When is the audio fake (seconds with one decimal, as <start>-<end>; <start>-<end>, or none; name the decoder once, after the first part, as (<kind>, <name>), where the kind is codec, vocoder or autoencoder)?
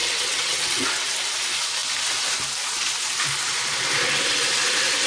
0.0-0.9 (vocoder, WaveNeXt)